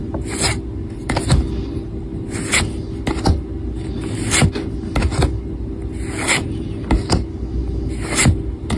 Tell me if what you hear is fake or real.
real